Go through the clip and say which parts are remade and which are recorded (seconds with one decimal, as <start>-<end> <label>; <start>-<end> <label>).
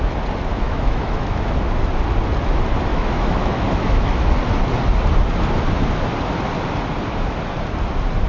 0.0-0.5 recorded; 0.5-1.5 remade; 1.5-2.9 recorded; 2.9-4.2 remade; 4.2-8.3 recorded